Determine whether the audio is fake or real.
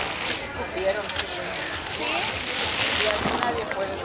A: real